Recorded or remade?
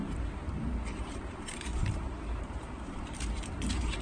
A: remade